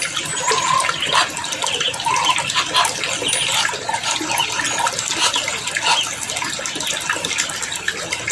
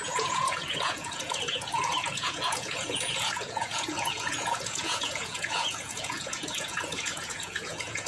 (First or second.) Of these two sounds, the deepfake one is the second